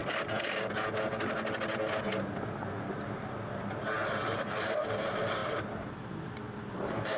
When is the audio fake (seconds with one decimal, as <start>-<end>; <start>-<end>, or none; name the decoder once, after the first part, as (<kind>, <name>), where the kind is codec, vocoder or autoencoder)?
4.3-7.2 (vocoder, BigVGAN v2)